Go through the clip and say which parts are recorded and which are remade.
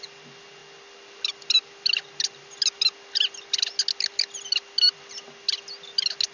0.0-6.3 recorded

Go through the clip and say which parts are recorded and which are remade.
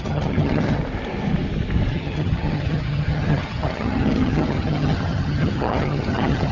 0.0-0.8 remade; 0.8-1.9 recorded; 1.9-6.5 remade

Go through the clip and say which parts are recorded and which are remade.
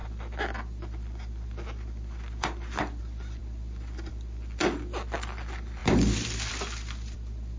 0.0-7.6 recorded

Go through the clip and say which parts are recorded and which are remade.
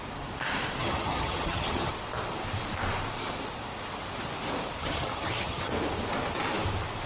0.0-0.8 recorded; 0.8-1.9 remade; 1.9-4.8 recorded; 4.8-5.7 remade; 5.7-7.1 recorded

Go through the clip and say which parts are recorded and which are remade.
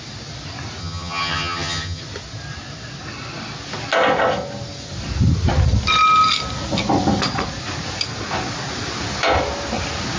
0.0-0.8 recorded; 0.8-2.0 remade; 2.0-10.2 recorded